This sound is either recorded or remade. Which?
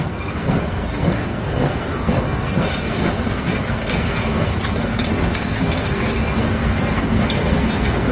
remade